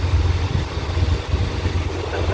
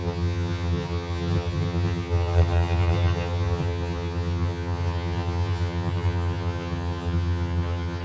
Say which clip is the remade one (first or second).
second